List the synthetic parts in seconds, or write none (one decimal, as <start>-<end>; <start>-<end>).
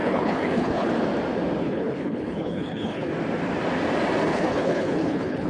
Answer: 0.0-0.9; 1.6-3.1; 4.3-5.5